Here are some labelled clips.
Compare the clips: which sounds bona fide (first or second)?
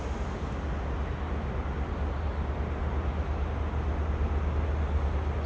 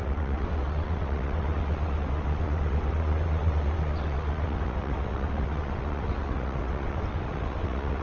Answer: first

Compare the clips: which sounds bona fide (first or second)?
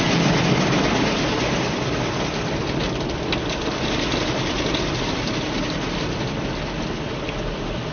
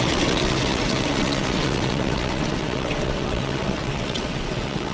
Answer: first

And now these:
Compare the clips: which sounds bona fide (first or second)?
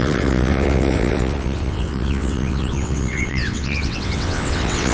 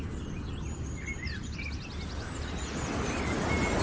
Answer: second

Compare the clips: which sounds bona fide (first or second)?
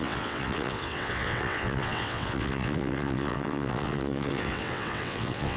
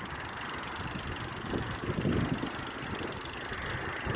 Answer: second